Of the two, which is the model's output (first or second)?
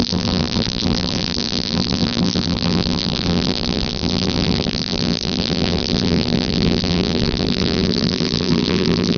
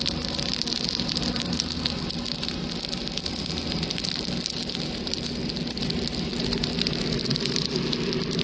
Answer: first